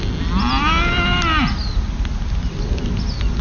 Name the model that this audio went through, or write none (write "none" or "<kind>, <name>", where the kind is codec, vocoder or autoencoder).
none